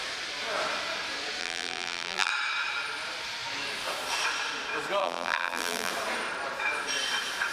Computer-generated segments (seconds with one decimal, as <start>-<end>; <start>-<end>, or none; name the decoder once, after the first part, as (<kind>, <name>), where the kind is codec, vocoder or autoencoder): 1.4-2.3 (vocoder, BigVGAN v2); 5.0-5.9